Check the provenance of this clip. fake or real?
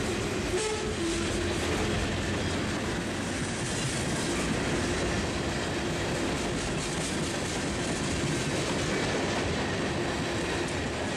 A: real